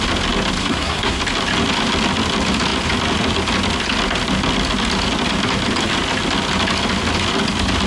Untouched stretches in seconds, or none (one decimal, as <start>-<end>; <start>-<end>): 0.0-0.6; 1.2-7.9